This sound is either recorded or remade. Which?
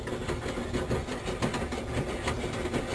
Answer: recorded